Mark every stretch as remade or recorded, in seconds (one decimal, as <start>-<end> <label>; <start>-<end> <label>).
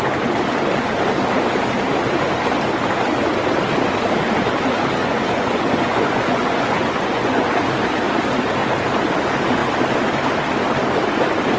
0.0-5.0 recorded; 5.0-7.5 remade; 7.5-11.6 recorded